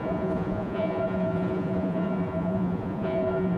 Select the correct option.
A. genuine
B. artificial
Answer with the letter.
B